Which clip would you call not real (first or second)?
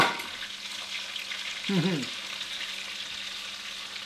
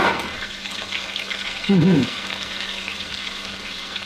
second